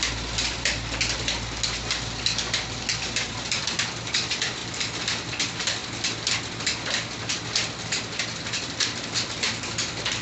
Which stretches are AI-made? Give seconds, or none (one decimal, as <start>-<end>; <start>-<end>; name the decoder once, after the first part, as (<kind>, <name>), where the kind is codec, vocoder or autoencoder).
0.0-5.8 (vocoder, BigVGAN v2); 8.2-10.2